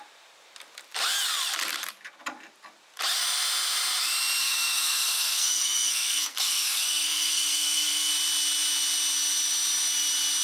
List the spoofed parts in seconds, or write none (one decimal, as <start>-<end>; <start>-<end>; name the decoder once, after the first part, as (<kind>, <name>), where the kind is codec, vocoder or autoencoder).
4.4-8.1 (codec, SNAC)